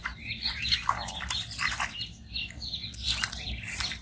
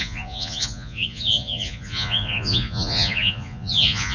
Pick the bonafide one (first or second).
first